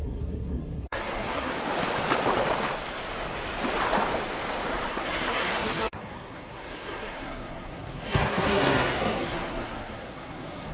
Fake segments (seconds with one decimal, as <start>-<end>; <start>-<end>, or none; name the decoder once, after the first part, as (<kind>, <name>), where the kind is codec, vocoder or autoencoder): 0.0-1.5 (codec, SNAC); 4.9-10.7